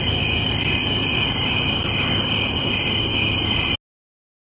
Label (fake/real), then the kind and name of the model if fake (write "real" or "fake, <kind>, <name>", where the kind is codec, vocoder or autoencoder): real